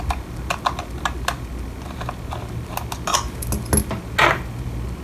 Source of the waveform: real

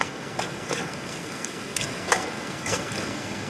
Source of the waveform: fake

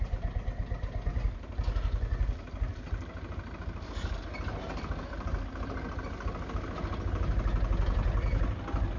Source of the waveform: real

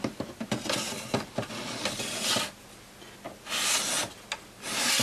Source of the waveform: real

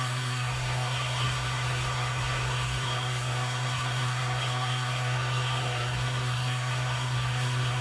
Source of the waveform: fake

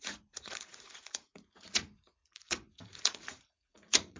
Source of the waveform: fake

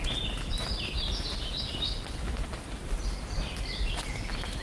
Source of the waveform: real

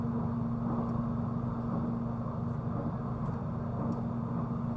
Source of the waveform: real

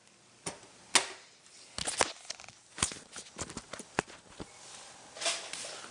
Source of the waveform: real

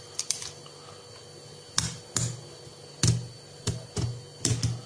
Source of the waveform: real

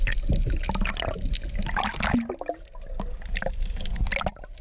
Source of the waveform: real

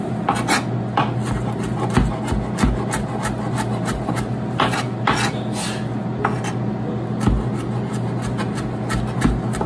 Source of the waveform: real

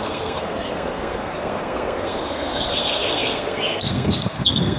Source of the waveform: fake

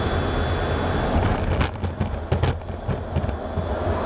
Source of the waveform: real